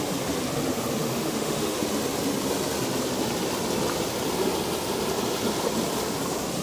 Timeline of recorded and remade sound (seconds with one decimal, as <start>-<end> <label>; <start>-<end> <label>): 0.0-1.0 recorded; 1.0-1.8 remade; 1.8-6.6 recorded